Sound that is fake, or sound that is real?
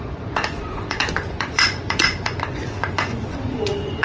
fake